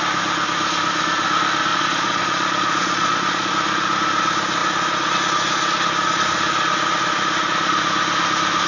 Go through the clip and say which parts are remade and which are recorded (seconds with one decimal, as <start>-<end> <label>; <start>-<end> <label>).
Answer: 0.0-1.7 recorded; 1.7-3.5 remade; 3.5-8.7 recorded